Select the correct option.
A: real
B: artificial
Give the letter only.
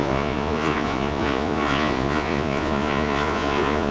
B